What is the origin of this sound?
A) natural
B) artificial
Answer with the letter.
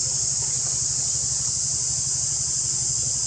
B